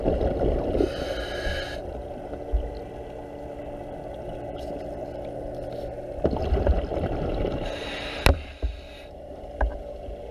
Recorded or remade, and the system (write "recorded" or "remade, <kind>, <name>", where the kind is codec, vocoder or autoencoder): recorded